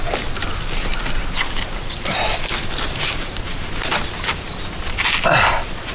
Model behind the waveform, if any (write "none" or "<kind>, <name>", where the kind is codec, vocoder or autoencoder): none